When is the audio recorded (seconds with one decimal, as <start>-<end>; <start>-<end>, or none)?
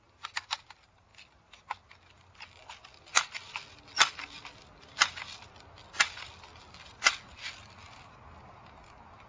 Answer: 0.0-9.3